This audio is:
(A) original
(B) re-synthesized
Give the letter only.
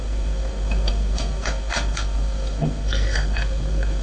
B